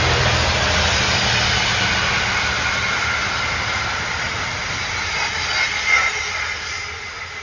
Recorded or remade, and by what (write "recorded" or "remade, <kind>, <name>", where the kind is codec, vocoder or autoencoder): recorded